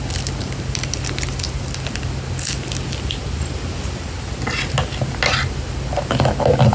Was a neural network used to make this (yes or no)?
no